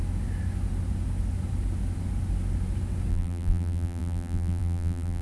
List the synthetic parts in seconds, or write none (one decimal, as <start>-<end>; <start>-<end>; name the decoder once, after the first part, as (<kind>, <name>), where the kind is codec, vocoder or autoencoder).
3.1-5.2 (vocoder, BigVGAN v2)